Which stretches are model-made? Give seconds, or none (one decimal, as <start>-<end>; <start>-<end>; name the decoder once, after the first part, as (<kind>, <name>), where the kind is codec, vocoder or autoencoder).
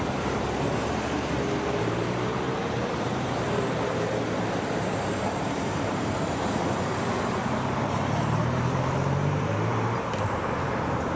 0.0-11.2 (vocoder, BigVGAN v2)